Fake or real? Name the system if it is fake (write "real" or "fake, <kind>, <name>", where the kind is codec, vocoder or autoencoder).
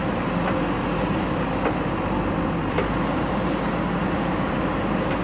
real